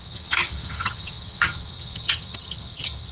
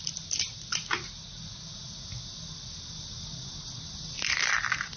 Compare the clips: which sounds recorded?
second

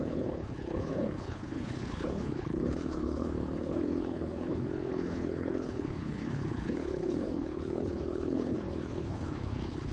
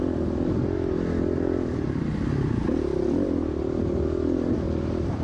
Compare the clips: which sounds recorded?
second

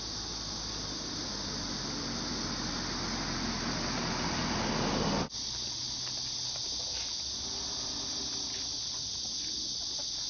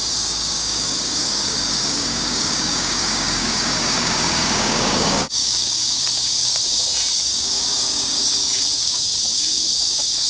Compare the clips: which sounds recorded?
first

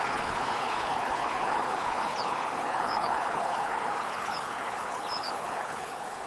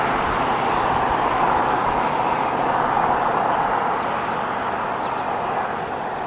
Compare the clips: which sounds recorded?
second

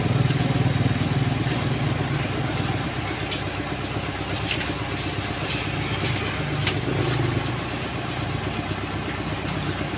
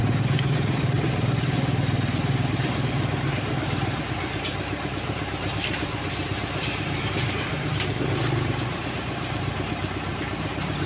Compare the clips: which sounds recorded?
first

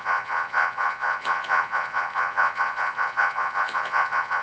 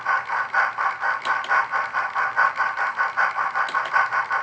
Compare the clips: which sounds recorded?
second